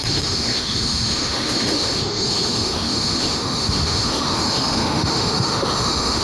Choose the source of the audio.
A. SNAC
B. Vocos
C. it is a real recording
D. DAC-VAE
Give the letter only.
D